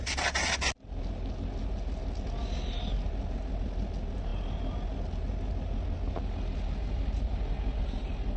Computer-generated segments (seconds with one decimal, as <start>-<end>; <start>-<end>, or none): none